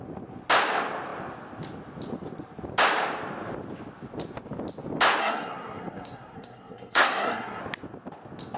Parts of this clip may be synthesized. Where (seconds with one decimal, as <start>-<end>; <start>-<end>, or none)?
5.2-7.6